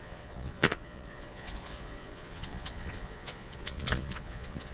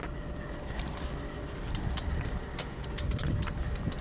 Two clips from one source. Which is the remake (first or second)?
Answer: first